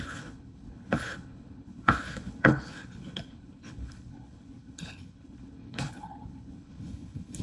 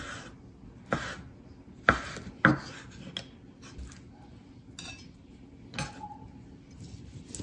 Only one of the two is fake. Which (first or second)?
first